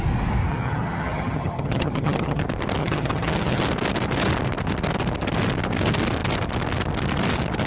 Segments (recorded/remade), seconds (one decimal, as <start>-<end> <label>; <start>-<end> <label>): 0.0-0.5 recorded; 0.5-2.4 remade; 2.4-2.8 recorded; 2.8-3.6 remade; 3.6-7.7 recorded